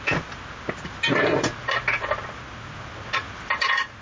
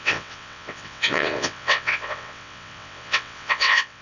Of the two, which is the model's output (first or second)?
second